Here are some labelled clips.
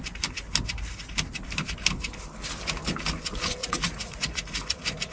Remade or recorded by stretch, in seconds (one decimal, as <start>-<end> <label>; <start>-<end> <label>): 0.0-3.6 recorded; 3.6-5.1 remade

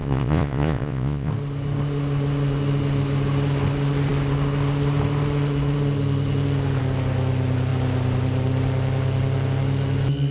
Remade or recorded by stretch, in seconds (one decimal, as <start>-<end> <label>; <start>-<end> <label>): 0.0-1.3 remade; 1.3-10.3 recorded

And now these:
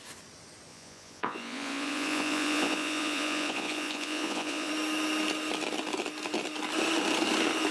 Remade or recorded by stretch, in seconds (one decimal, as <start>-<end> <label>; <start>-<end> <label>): 0.0-0.7 recorded; 0.7-4.7 remade; 4.7-7.7 recorded

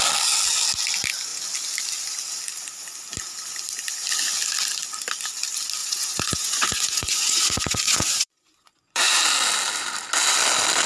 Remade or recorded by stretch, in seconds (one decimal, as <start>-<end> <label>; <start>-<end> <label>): 0.0-5.8 recorded; 5.8-9.2 remade; 9.2-10.9 recorded

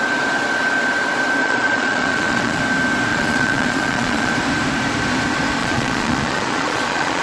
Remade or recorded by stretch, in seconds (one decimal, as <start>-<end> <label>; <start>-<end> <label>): 0.0-1.4 recorded; 1.4-2.6 remade; 2.6-3.1 recorded; 3.1-4.3 remade; 4.3-5.6 recorded; 5.6-7.2 remade

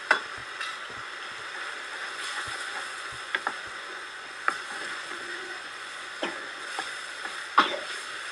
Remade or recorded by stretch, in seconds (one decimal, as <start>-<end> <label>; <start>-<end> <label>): 0.0-0.4 recorded; 0.4-1.1 remade; 1.1-2.0 recorded; 2.0-7.0 remade; 7.0-8.3 recorded

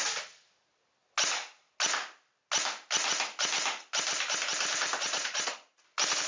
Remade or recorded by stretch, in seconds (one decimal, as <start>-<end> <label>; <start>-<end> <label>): 0.0-5.0 recorded; 5.0-5.8 remade; 5.8-6.3 recorded

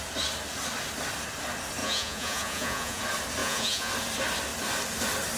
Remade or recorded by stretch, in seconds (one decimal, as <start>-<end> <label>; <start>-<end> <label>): 0.0-1.8 recorded; 1.8-3.0 remade; 3.0-3.4 recorded; 3.4-3.9 remade; 3.9-5.4 recorded